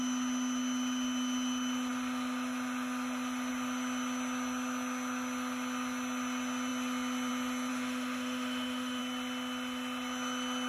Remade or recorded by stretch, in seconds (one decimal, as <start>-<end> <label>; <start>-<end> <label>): 0.0-7.7 recorded; 7.7-9.0 remade; 9.0-10.7 recorded